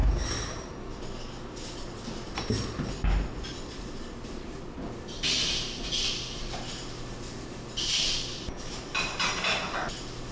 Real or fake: real